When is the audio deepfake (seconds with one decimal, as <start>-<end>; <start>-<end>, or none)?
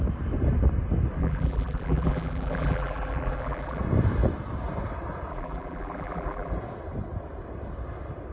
1.2-3.8; 5.3-6.5